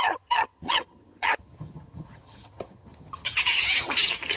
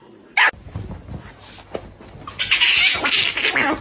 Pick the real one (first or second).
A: second